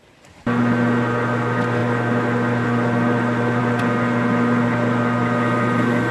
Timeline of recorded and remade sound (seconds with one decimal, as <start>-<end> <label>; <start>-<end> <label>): 0.0-6.1 recorded